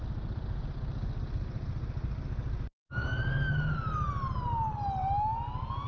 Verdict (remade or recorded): recorded